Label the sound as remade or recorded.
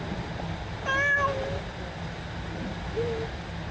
recorded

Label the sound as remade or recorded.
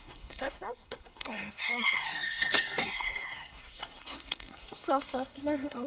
remade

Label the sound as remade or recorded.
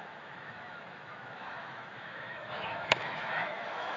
remade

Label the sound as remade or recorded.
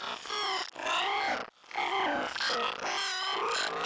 recorded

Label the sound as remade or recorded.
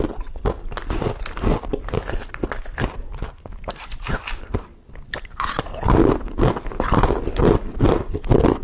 recorded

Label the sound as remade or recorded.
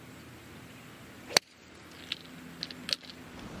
recorded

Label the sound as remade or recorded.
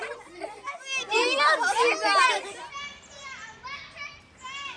recorded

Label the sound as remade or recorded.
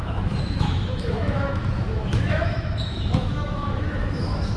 remade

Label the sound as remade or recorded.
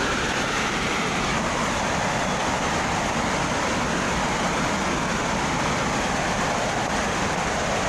recorded